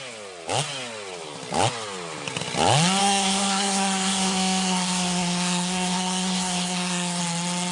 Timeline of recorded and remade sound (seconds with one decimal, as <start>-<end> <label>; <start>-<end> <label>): 0.0-3.0 recorded; 3.0-7.2 remade; 7.2-7.7 recorded